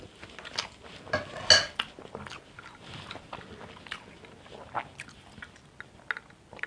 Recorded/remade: recorded